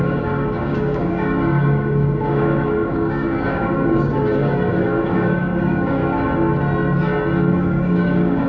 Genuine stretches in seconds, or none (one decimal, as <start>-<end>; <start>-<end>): 6.0-7.5